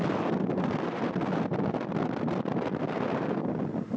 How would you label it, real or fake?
real